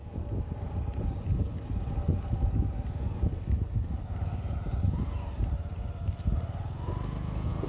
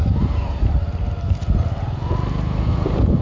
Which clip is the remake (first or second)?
second